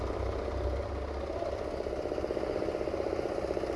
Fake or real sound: real